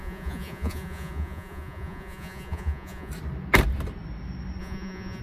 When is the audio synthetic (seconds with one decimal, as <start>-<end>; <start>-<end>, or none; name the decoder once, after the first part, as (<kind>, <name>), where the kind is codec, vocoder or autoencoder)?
0.0-3.1 (vocoder, Vocos); 4.6-5.2